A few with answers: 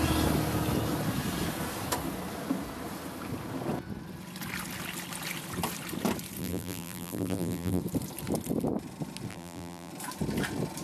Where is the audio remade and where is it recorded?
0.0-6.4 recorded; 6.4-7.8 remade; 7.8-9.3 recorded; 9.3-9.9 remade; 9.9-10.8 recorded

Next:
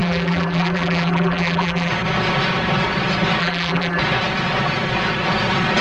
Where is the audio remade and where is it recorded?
0.0-1.9 remade; 1.9-3.4 recorded; 3.4-4.0 remade; 4.0-5.8 recorded

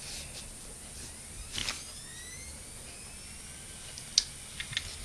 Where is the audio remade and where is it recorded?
0.0-5.0 recorded

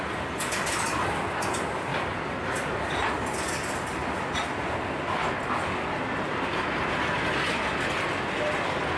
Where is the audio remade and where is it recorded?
0.0-9.0 recorded

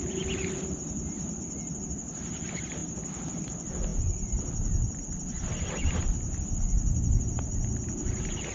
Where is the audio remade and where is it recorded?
0.0-8.5 recorded

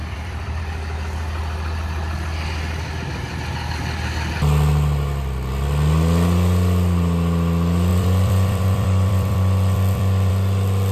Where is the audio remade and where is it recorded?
0.0-0.6 remade; 0.6-7.9 recorded; 7.9-10.3 remade; 10.3-10.9 recorded

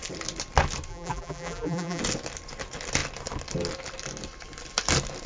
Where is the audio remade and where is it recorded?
0.0-0.9 recorded; 0.9-2.0 remade; 2.0-5.3 recorded